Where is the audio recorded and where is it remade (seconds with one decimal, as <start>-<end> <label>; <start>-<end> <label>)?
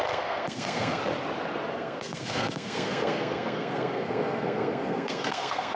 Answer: 0.0-1.0 remade; 1.0-1.7 recorded; 1.7-5.8 remade